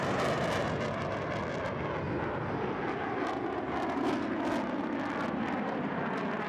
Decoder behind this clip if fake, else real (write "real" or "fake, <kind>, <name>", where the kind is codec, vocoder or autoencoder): real